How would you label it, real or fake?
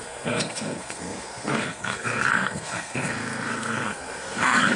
fake